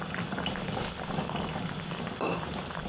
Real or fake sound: real